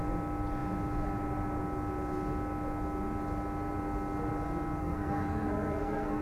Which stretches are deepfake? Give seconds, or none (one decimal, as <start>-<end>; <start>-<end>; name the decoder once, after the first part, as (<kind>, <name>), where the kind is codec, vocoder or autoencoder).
4.8-6.2 (codec, SNAC)